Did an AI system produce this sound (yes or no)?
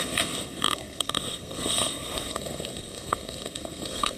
yes